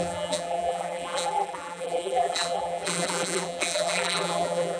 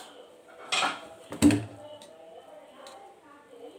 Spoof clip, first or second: first